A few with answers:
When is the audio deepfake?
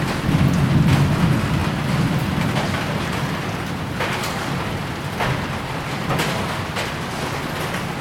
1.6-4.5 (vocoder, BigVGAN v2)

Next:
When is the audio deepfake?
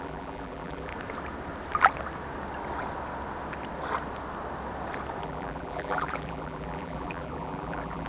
0.0-0.9 (vocoder, BigVGAN v2); 5.2-8.1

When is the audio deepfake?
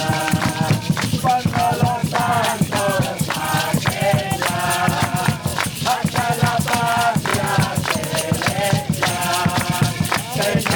2.0-3.4 (vocoder, BigVGAN v2)